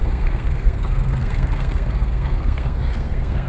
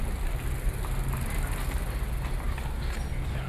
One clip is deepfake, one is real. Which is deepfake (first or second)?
first